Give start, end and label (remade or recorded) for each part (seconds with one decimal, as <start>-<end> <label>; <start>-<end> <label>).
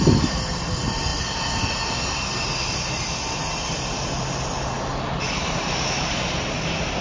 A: 0.0-7.0 recorded